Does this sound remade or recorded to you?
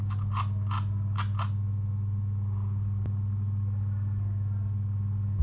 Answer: recorded